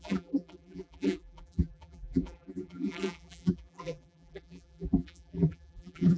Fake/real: fake